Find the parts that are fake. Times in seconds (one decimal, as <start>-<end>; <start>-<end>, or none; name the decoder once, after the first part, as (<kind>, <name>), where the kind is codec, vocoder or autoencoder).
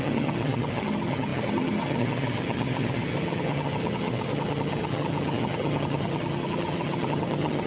0.0-7.7 (vocoder, HiFi-GAN)